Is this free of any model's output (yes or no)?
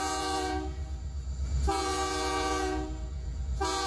no